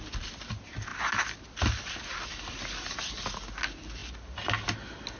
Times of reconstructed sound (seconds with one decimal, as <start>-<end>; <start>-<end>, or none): none